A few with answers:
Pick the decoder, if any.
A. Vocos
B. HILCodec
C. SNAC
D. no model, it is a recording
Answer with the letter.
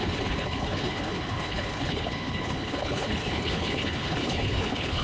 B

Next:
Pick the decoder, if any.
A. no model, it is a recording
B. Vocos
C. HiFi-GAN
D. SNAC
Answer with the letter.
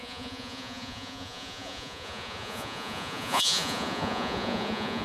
B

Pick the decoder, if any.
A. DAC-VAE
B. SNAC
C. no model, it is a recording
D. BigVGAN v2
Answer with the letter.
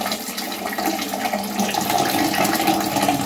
C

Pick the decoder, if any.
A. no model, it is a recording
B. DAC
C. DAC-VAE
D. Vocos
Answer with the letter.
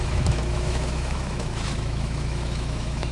C